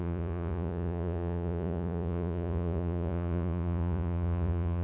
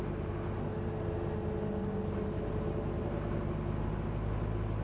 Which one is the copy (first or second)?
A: first